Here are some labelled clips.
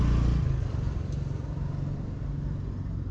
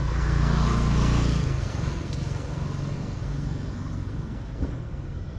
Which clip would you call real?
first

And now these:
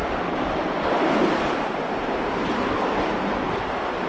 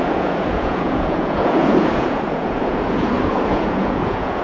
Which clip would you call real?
first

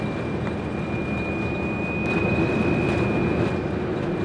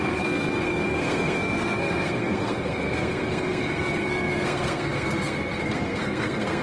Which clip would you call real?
first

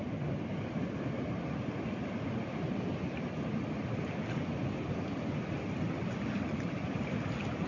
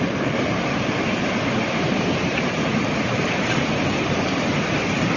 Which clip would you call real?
first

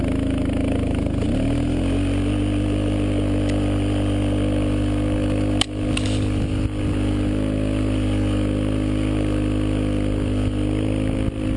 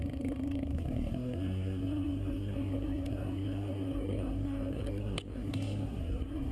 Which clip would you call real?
first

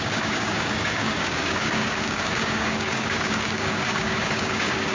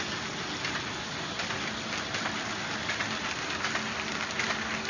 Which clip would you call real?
second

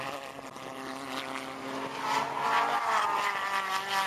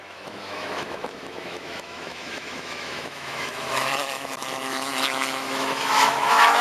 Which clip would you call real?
first